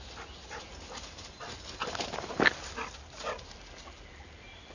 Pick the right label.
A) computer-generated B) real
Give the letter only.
B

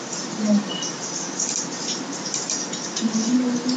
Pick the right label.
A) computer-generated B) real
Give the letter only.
B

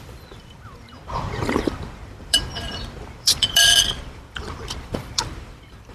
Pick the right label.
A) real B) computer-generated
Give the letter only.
B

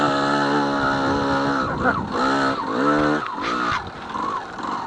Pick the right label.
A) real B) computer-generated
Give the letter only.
A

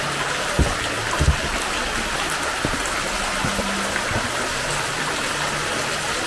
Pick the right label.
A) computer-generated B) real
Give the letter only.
B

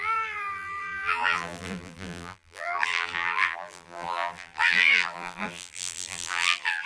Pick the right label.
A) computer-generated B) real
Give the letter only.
A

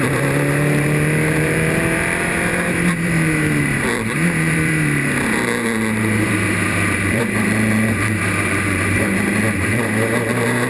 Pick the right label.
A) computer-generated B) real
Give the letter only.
A